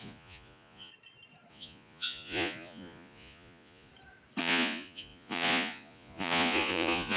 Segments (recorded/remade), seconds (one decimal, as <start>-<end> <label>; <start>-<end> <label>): 0.0-0.9 remade; 0.9-1.5 recorded; 1.5-3.9 remade; 3.9-4.4 recorded; 4.4-7.2 remade

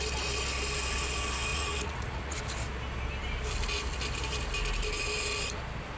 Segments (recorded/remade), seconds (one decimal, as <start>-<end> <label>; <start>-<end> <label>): 0.0-1.5 recorded; 1.5-2.4 remade; 2.4-6.0 recorded